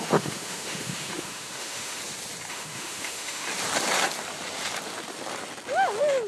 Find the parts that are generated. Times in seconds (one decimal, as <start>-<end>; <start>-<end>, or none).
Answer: 0.0-2.0; 2.5-3.5